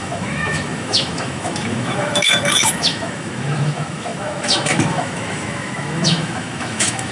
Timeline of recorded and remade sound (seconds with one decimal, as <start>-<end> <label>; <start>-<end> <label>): 0.0-7.1 remade